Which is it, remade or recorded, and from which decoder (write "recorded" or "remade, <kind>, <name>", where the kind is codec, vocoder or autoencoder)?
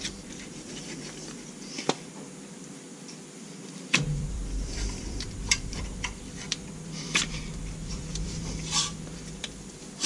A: remade, vocoder, BigVGAN v2